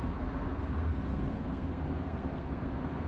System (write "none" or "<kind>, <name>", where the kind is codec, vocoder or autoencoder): codec, SNAC